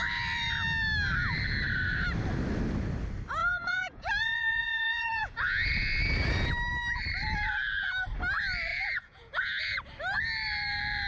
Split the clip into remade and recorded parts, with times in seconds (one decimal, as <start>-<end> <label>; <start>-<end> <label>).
0.0-3.4 recorded; 3.4-5.8 remade; 5.8-8.7 recorded; 8.7-9.6 remade; 9.6-11.1 recorded